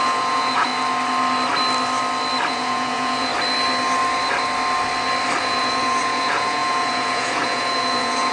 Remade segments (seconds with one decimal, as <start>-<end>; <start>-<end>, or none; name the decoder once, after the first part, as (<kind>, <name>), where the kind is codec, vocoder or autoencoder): 0.0-0.7 (vocoder, Vocos); 2.5-3.3; 5.4-8.3